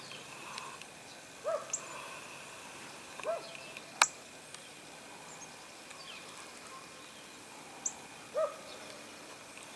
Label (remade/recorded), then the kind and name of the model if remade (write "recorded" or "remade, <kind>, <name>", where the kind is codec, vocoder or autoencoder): recorded